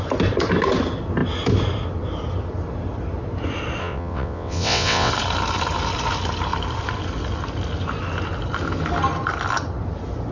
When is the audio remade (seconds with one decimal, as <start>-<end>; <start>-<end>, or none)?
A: 3.8-5.1